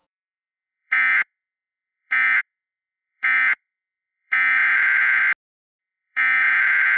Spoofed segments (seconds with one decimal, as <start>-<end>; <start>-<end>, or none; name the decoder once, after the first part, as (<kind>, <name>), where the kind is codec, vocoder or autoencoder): 0.0-5.2 (vocoder, Vocos); 5.8-7.0